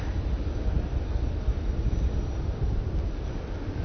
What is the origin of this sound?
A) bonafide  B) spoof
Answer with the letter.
A